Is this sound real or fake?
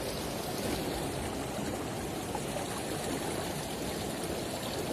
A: real